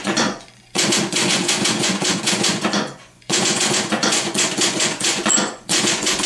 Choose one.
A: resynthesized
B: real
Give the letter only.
A